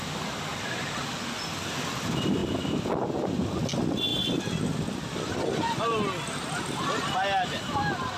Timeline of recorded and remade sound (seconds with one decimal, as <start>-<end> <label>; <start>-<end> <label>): 0.0-0.5 recorded; 0.5-1.2 remade; 1.2-8.2 recorded